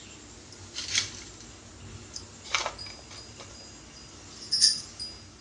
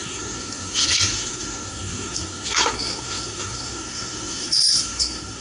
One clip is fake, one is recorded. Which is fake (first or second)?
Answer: second